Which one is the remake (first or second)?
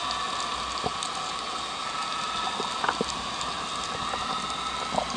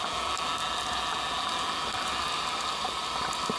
first